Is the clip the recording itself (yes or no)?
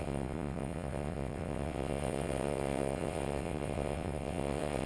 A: no